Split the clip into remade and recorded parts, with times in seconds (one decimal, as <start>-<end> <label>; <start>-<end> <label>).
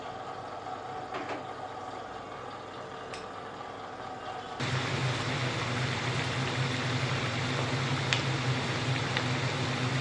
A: 0.0-10.0 recorded